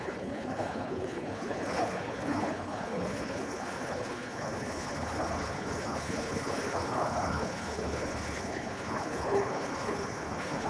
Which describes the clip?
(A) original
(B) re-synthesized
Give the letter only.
B